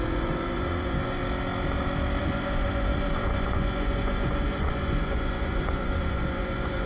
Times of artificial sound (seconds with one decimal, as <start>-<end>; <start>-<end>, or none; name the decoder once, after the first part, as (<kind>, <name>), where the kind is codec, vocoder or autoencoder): 0.0-1.2 (vocoder, Vocos); 2.2-6.9